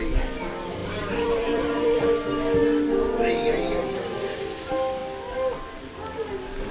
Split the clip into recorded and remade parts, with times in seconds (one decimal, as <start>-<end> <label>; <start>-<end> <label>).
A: 0.0-0.8 recorded; 0.8-2.0 remade; 2.0-6.7 recorded